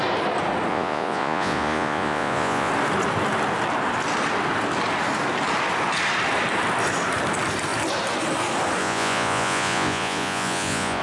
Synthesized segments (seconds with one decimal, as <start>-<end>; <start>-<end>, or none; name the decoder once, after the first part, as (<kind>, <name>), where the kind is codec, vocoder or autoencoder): 0.7-2.7 (vocoder, Vocos); 8.8-11.0